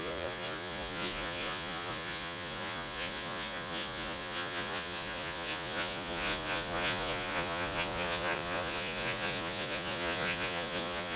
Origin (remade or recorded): remade